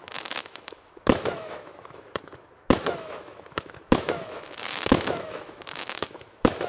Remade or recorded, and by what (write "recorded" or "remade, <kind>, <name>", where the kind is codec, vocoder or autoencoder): remade, autoencoder, DAC-VAE